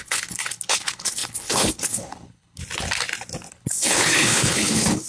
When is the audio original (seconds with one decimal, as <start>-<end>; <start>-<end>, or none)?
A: 2.6-3.5